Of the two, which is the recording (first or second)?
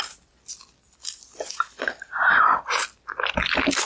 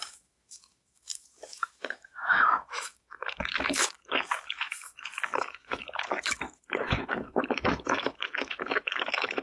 first